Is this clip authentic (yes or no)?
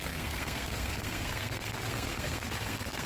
no